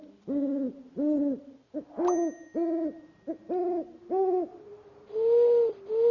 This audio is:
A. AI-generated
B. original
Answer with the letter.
B